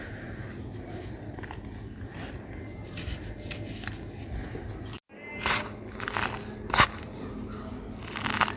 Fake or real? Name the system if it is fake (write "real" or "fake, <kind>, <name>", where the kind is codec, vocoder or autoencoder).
real